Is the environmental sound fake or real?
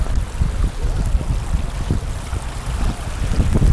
real